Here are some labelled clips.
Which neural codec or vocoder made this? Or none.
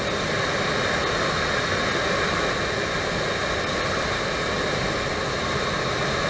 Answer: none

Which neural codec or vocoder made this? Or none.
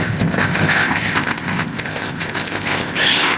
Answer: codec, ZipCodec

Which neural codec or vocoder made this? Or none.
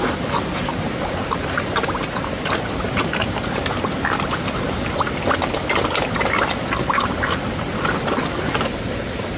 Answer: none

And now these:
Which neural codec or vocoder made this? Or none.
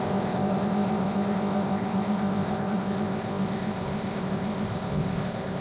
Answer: codec, ZipCodec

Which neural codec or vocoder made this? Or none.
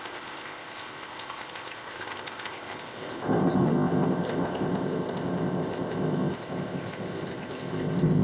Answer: codec, ZipCodec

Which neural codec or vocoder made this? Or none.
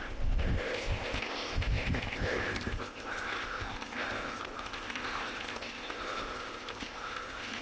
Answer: codec, ZipCodec